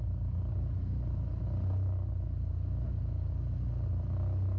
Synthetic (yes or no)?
no